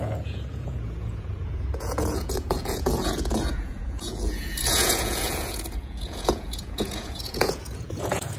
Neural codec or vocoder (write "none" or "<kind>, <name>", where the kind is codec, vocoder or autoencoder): vocoder, Vocos